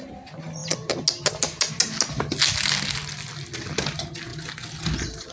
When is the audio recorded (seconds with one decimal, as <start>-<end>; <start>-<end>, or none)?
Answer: 0.0-5.3